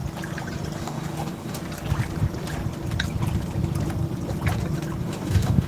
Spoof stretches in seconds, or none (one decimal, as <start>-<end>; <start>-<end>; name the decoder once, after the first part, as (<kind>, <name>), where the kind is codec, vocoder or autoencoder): 0.8-1.6 (codec, DAC); 5.0-5.7